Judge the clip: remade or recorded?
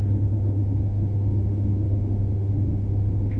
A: remade